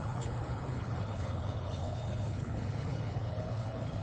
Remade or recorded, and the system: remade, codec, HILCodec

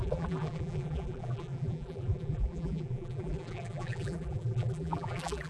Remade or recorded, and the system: remade, vocoder, BigVGAN v2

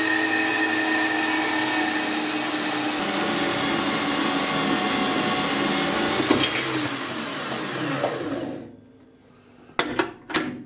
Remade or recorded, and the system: recorded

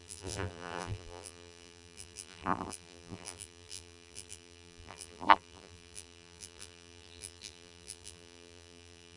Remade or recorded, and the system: remade, vocoder, BigVGAN v2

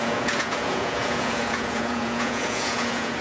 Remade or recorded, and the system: remade, vocoder, Vocos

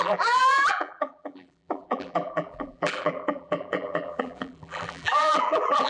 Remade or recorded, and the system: remade, vocoder, BigVGAN v2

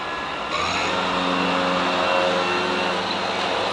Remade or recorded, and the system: recorded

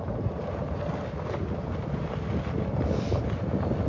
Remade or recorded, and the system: recorded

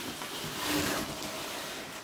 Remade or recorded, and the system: recorded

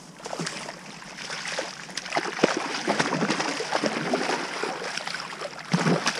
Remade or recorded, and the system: recorded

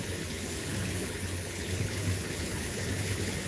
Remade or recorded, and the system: remade, codec, HILCodec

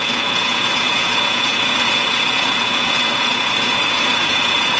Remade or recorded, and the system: remade, vocoder, Vocos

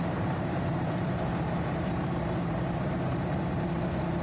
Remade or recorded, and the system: remade, vocoder, BigVGAN v2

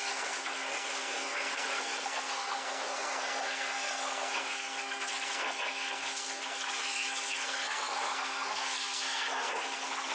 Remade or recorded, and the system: remade, codec, SNAC